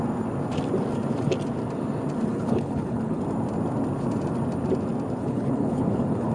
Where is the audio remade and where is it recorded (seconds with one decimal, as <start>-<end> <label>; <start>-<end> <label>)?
0.0-2.3 recorded; 2.3-3.2 remade; 3.2-5.2 recorded; 5.2-6.3 remade